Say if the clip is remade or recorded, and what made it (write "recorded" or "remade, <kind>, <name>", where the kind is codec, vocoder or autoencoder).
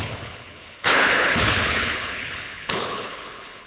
remade, codec, HILCodec